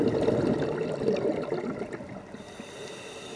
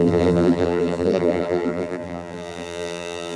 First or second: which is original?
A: first